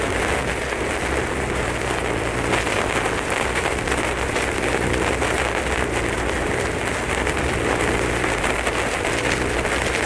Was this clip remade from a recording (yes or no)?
no